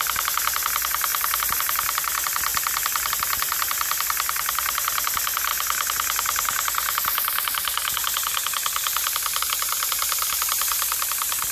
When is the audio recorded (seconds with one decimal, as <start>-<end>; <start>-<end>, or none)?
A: 0.0-11.5